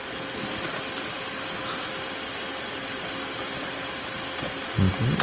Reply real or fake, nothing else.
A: real